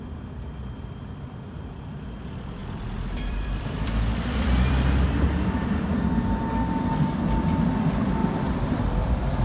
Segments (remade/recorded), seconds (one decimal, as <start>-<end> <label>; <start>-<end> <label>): 0.0-2.6 recorded; 2.6-5.8 remade; 5.8-8.2 recorded; 8.2-8.8 remade; 8.8-9.4 recorded